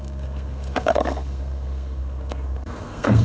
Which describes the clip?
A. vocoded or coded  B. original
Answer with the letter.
A